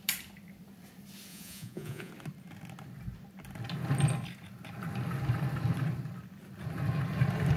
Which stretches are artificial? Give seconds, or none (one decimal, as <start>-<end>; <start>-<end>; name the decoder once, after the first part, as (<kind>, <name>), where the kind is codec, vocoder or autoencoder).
1.3-2.1 (vocoder, Vocos)